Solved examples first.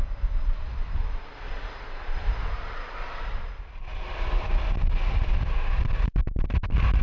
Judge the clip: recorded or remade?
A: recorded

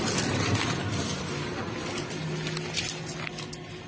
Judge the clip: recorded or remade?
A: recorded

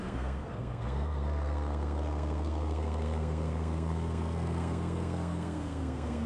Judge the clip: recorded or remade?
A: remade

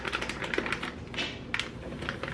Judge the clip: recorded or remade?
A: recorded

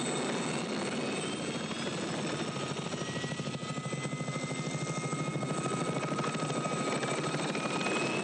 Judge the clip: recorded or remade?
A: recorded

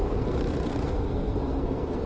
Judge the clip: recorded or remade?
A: remade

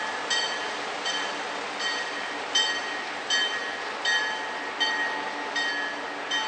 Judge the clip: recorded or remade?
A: recorded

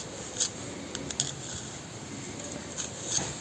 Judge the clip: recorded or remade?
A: recorded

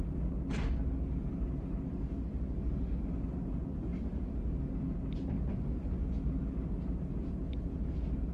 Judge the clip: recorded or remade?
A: recorded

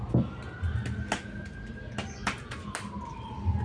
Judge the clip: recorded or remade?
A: recorded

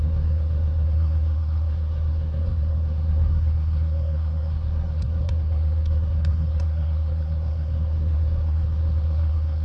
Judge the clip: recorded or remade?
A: remade